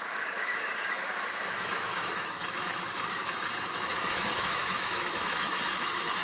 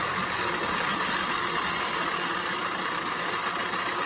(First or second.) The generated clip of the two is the first